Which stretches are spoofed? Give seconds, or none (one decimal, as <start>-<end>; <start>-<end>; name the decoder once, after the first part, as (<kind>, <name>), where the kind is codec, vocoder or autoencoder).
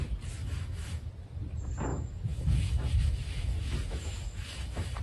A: 0.4-1.1 (autoencoder, DAC-VAE); 1.9-5.0